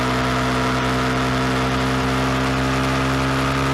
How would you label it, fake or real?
real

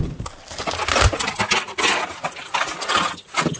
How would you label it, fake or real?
real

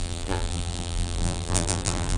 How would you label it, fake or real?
fake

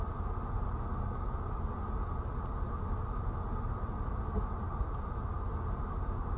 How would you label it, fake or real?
real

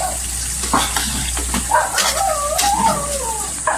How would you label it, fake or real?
real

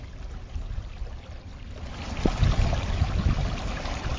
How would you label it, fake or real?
real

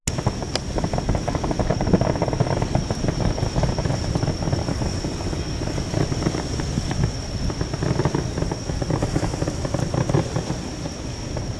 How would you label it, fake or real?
real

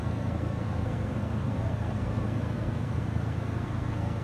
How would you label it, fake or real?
fake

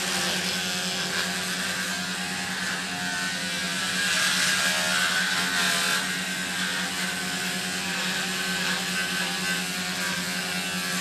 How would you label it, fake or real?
real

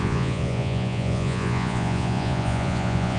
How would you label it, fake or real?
fake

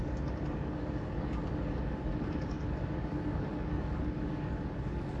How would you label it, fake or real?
fake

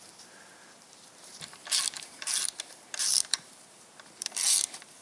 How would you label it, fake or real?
fake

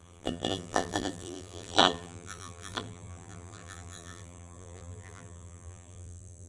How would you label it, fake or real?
fake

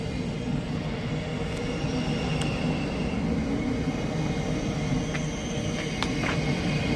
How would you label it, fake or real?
real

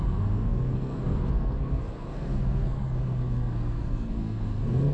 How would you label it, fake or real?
fake